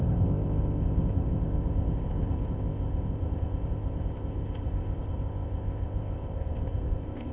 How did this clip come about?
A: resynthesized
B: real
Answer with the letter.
A